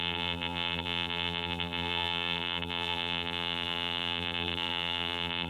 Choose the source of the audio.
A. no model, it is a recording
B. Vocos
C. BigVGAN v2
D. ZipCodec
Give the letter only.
C